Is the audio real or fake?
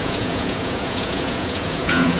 fake